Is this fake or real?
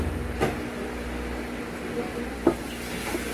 real